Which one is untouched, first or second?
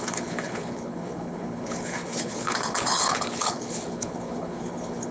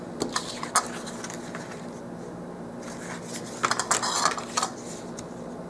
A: second